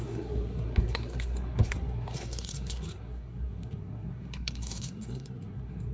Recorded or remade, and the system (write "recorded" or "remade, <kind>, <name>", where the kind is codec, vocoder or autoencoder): remade, codec, SNAC